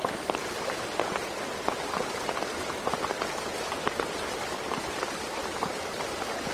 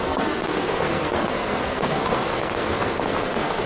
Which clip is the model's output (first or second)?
second